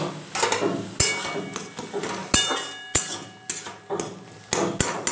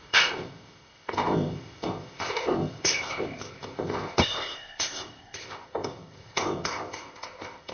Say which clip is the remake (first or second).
second